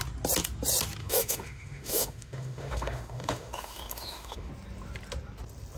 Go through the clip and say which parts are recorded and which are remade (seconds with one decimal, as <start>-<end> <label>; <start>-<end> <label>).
0.0-1.0 recorded; 1.0-4.5 remade; 4.5-5.8 recorded